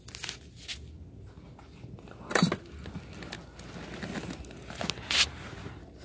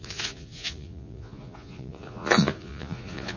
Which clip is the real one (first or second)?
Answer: first